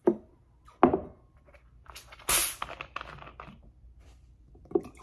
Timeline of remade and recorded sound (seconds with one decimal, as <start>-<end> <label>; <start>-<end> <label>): 0.0-5.0 recorded